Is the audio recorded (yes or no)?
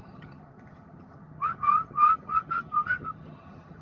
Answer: no